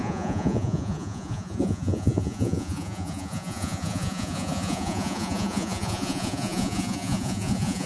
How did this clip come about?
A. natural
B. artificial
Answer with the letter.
B